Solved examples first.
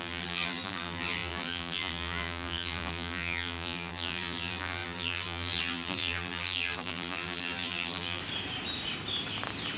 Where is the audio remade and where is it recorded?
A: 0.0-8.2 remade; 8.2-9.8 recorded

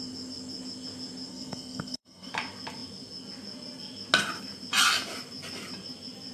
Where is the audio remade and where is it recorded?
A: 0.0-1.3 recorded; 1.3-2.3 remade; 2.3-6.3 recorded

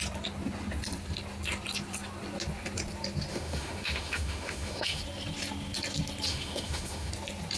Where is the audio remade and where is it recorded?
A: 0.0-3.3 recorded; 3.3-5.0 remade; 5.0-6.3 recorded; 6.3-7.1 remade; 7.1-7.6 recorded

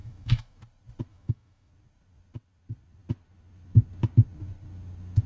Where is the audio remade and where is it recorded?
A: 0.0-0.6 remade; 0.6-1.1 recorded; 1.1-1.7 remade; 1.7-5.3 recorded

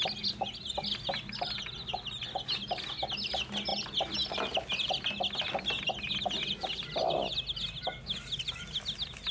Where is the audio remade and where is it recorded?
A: 0.0-9.3 recorded